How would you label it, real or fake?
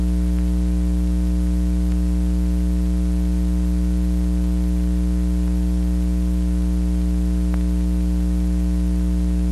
real